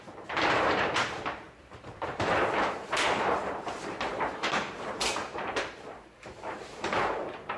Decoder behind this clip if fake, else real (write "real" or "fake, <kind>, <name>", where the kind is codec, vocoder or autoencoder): fake, vocoder, BigVGAN v2